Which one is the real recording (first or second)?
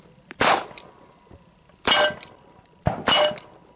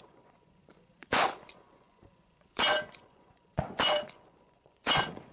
first